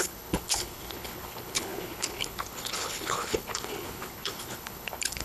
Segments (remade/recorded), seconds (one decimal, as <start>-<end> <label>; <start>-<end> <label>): 0.0-5.2 remade